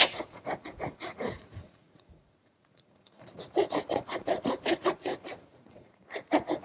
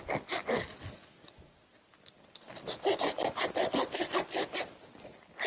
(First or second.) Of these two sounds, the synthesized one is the first